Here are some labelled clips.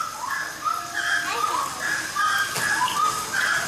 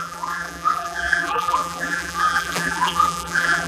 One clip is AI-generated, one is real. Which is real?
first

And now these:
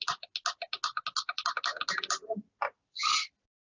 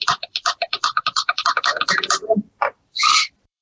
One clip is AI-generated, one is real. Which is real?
first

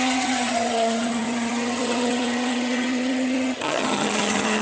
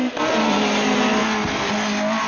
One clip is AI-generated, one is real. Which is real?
second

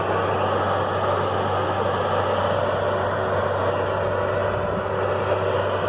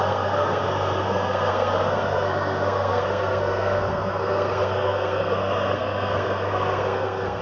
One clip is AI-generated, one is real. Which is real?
first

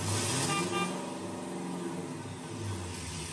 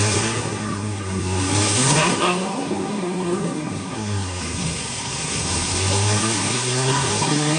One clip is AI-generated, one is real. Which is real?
first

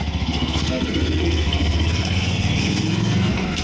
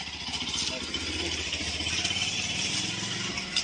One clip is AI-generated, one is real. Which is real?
second